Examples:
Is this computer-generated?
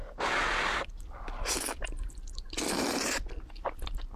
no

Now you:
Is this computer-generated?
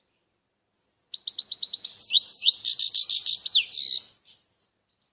no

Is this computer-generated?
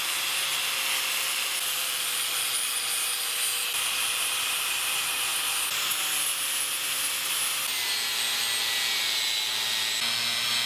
no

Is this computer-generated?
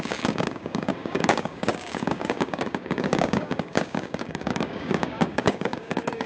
yes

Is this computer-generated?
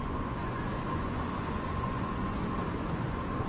yes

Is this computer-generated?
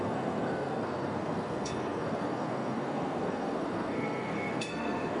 yes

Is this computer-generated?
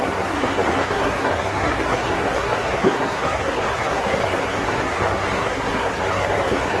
yes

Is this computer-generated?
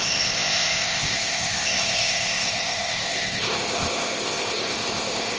yes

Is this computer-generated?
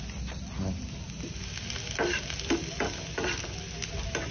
no